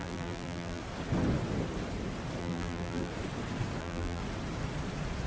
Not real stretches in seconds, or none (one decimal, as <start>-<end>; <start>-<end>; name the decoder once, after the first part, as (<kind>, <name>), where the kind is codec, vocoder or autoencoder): 0.0-0.8 (vocoder, BigVGAN v2); 2.4-3.1; 3.8-4.2